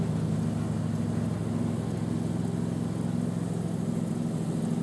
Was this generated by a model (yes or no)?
no